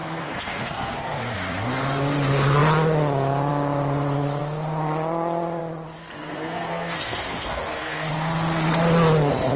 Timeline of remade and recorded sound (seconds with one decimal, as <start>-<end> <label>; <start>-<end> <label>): 0.0-1.2 remade; 1.2-6.0 recorded; 6.0-8.1 remade; 8.1-9.6 recorded